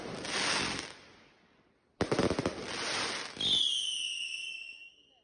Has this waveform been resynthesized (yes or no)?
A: no